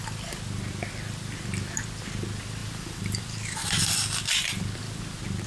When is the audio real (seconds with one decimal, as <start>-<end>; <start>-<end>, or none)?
0.0-2.6; 3.2-5.5